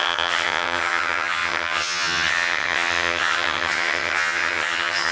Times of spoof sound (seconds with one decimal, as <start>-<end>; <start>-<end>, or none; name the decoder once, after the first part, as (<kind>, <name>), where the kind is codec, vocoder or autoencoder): 0.0-5.1 (vocoder, HiFi-GAN)